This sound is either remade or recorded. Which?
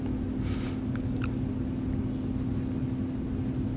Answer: recorded